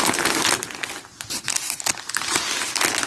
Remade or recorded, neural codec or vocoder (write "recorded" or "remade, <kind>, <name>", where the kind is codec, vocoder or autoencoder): recorded